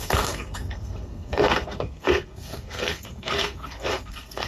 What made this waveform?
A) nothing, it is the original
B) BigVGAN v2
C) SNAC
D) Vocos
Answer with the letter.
C